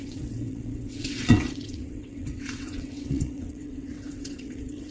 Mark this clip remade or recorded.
remade